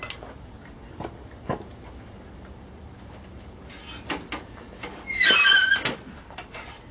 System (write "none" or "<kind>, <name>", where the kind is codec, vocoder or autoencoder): none